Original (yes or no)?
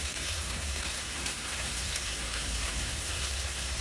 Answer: no